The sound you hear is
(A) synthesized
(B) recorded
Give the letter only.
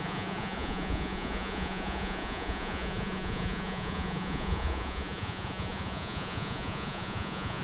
A